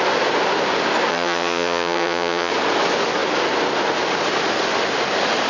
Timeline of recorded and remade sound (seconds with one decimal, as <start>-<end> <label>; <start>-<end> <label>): 0.0-1.1 recorded; 1.1-2.5 remade; 2.5-5.5 recorded